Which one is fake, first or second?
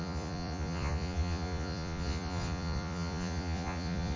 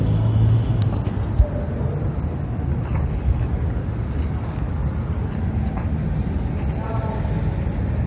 first